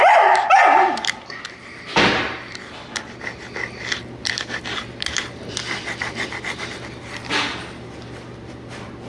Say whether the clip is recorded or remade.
recorded